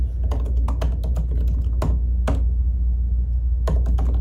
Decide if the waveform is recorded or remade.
recorded